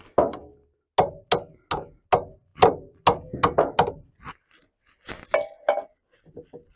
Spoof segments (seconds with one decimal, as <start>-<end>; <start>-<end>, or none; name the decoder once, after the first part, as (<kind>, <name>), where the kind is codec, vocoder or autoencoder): none